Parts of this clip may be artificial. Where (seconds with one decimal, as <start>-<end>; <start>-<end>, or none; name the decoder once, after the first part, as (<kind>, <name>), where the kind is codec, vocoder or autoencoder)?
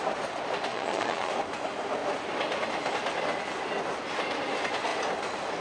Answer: 0.7-1.3 (vocoder, Vocos)